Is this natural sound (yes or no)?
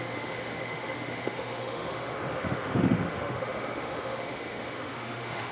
no